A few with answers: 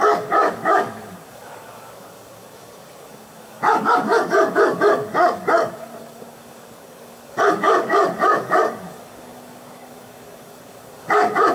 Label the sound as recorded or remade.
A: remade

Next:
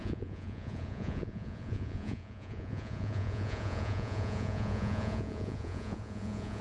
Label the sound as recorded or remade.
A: remade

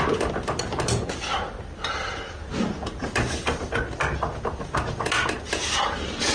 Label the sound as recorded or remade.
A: recorded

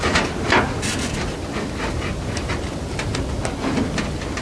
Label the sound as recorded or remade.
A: recorded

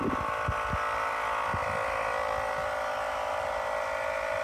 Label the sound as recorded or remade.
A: recorded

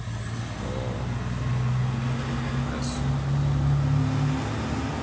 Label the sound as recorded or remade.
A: recorded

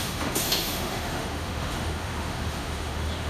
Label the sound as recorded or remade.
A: remade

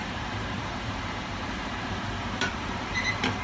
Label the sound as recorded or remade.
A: remade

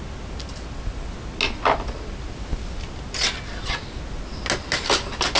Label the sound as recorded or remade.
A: recorded